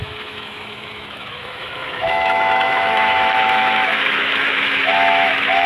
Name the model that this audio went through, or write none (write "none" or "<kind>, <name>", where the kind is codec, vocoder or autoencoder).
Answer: autoencoder, DAC-VAE